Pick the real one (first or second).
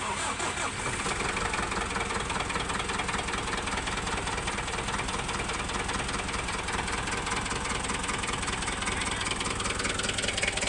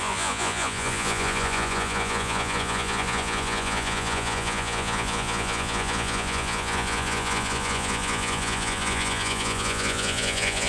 first